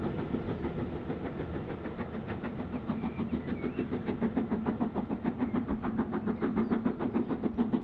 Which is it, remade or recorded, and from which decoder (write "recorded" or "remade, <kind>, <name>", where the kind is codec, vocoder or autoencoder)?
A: recorded